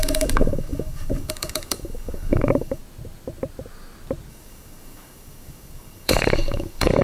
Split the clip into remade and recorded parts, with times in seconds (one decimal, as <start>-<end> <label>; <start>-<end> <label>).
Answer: 0.0-2.8 remade; 2.8-4.3 recorded; 4.3-7.0 remade